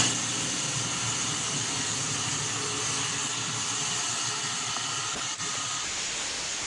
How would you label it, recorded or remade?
recorded